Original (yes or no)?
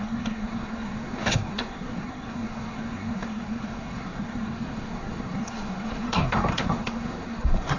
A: no